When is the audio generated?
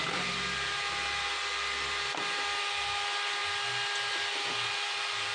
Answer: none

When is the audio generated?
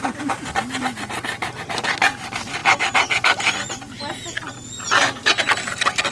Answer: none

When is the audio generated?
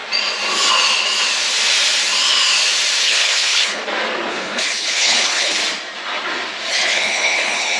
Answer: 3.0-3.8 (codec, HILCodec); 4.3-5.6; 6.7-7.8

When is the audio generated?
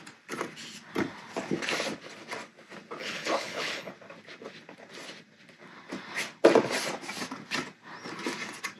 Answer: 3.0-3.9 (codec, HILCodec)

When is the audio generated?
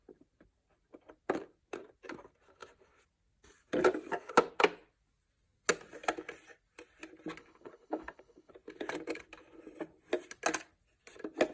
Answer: 7.4-8.5 (codec, HILCodec)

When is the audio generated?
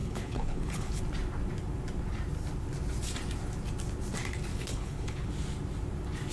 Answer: 0.0-1.0 (codec, HILCodec); 4.5-5.3